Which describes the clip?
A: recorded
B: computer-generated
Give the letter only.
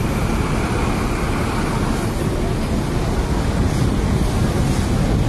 A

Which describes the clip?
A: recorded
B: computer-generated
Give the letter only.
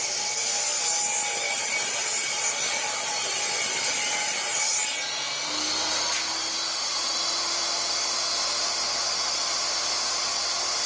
A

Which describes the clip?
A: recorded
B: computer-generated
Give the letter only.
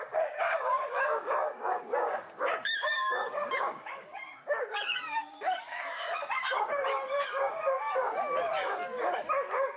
B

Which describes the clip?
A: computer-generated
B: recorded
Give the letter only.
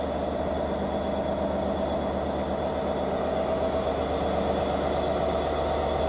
B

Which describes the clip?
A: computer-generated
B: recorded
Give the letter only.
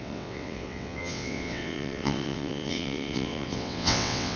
A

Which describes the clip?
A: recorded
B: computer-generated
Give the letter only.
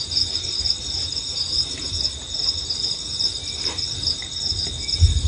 A